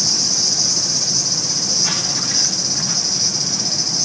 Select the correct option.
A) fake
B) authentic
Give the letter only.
B